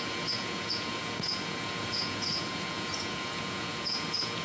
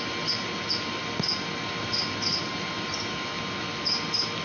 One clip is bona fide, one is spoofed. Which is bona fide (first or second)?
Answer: second